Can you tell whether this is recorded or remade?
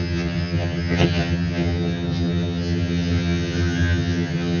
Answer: remade